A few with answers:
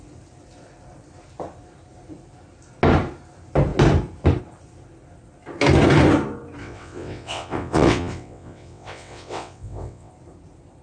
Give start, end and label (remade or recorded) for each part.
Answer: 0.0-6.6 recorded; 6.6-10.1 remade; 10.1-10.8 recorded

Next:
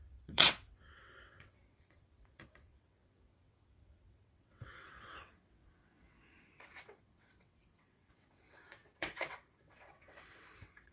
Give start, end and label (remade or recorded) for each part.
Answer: 0.0-10.9 remade

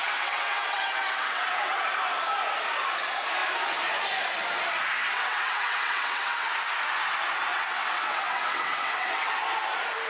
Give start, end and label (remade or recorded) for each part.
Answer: 0.0-1.8 remade; 1.8-5.0 recorded; 5.0-6.5 remade; 6.5-7.5 recorded; 7.5-9.3 remade; 9.3-10.1 recorded

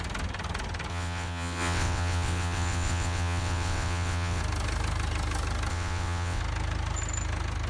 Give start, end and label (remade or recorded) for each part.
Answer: 0.0-0.9 recorded; 0.9-4.4 remade; 4.4-5.7 recorded; 5.7-6.4 remade; 6.4-7.7 recorded

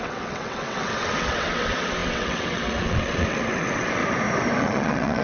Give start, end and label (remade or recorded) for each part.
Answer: 0.0-4.0 remade; 4.0-4.6 recorded; 4.6-5.2 remade

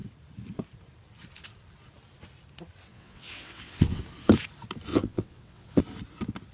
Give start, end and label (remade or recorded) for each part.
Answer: 0.0-2.9 recorded; 2.9-4.0 remade; 4.0-4.9 recorded; 4.9-5.8 remade; 5.8-6.5 recorded

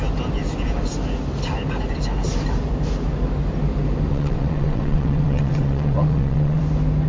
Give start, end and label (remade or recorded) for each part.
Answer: 0.0-4.1 recorded; 4.1-6.6 remade; 6.6-7.1 recorded